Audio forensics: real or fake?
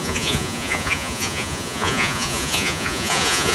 fake